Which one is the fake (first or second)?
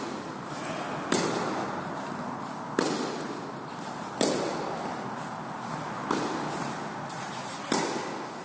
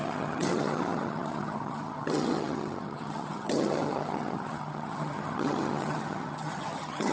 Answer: second